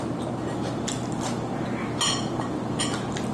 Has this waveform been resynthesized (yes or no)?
no